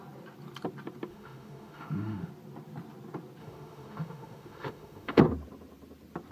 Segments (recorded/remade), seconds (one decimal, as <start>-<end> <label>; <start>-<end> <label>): 0.0-1.1 recorded; 1.1-2.3 remade; 2.3-3.4 recorded; 3.4-5.2 remade; 5.2-6.3 recorded